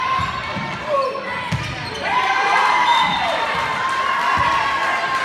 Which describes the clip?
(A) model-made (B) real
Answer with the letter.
B